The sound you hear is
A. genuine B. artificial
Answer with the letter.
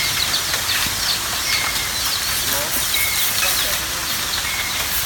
A